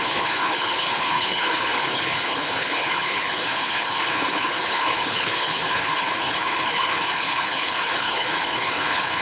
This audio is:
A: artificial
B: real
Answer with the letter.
A